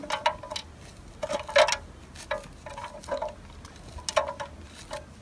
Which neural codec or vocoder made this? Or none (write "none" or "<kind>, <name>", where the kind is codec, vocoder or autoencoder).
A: none